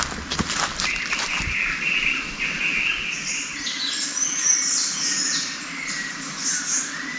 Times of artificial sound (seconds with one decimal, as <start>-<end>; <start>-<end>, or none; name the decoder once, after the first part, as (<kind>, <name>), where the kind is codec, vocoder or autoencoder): none